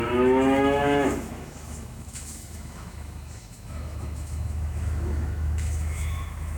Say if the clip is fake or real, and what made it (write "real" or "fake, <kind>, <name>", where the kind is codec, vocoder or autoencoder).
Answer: fake, autoencoder, DAC-VAE